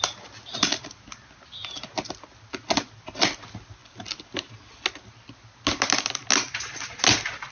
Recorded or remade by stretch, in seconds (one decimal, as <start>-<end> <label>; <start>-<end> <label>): 0.0-7.5 recorded